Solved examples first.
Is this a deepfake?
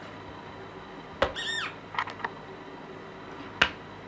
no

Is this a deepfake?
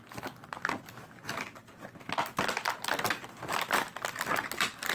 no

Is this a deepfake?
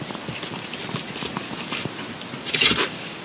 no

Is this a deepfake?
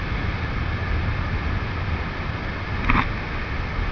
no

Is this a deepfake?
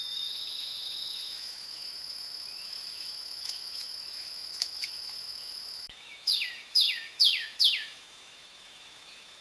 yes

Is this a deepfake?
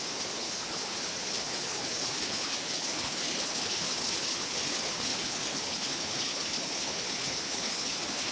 yes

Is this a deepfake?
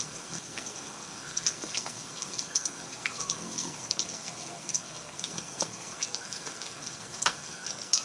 yes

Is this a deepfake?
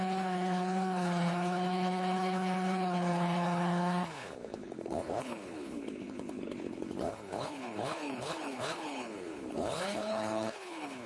yes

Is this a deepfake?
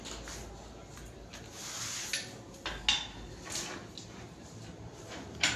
no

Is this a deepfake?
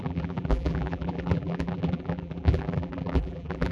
yes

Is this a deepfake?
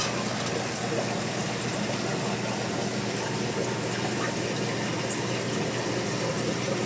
no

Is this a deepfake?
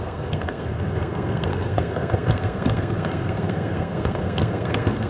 yes